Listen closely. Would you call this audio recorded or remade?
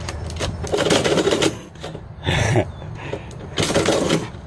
recorded